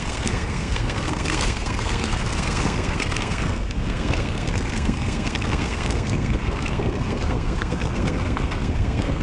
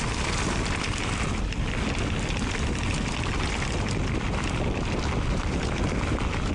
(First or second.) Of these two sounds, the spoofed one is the first